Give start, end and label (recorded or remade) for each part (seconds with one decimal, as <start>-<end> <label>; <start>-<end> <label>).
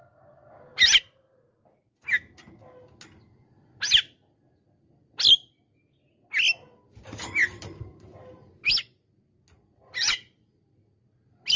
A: 0.0-7.4 recorded; 7.4-8.7 remade; 8.7-11.6 recorded